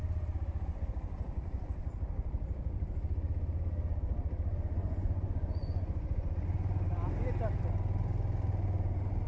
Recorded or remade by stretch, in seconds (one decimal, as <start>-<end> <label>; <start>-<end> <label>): 0.0-4.8 recorded; 4.8-6.3 remade; 6.3-9.3 recorded